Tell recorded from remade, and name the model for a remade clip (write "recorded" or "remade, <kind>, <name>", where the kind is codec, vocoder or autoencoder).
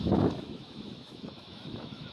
remade, autoencoder, DAC-VAE